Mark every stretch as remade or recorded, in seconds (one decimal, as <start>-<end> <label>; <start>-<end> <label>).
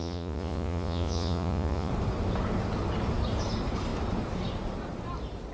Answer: 0.0-1.9 remade; 1.9-5.5 recorded